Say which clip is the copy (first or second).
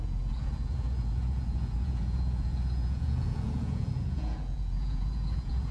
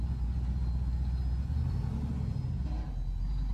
first